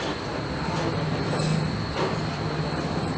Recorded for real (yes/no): yes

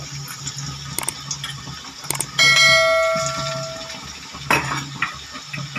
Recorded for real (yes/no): yes